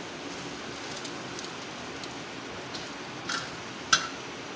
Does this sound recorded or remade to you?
recorded